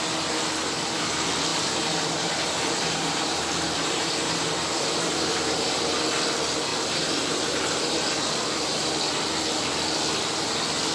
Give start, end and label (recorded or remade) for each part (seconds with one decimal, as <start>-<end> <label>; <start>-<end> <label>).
0.0-1.5 recorded; 1.5-5.9 remade; 5.9-6.7 recorded; 6.7-8.9 remade; 8.9-10.9 recorded